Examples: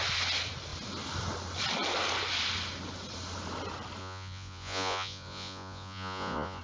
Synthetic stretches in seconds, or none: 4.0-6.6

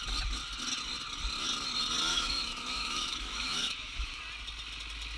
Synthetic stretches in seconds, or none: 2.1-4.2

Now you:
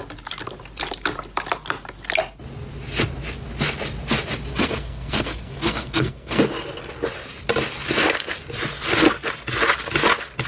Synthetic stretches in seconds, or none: 4.6-6.4

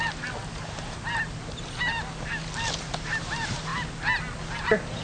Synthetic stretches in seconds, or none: 3.0-3.7; 4.6-5.0

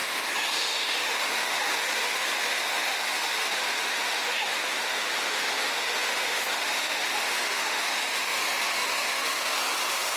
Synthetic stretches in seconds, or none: 0.0-10.2

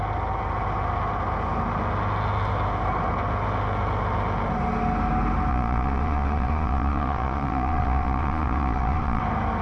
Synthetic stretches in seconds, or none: 5.5-9.2

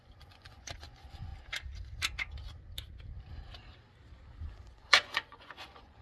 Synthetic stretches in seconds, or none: 0.0-1.3; 4.9-6.0

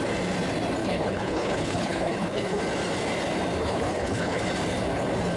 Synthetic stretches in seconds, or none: 0.8-2.6; 3.6-4.4